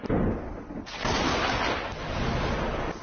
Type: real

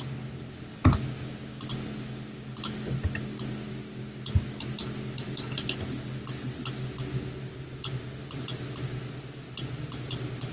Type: real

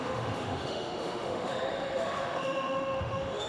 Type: fake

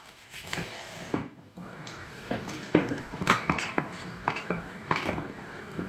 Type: fake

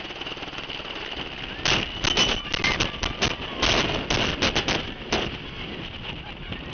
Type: real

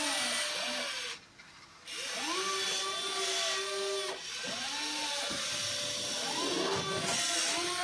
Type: real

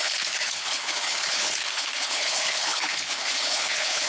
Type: fake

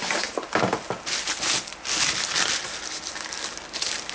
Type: real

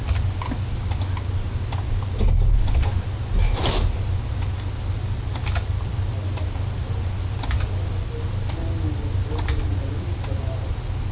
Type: real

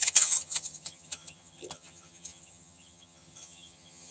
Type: fake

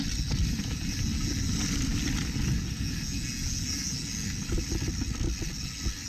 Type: real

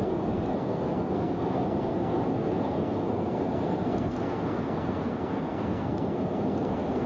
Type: fake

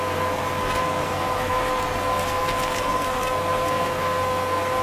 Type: fake